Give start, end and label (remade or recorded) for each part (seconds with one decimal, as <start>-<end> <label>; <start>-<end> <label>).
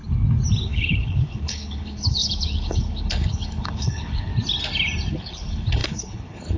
0.0-0.6 recorded; 0.6-4.3 remade; 4.3-5.1 recorded; 5.1-6.6 remade